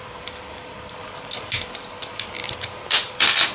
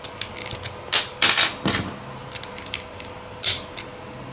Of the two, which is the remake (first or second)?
first